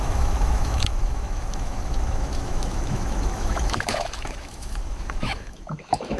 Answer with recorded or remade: remade